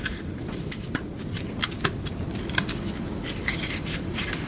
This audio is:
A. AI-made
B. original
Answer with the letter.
B